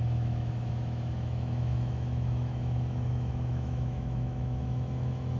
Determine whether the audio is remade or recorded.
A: remade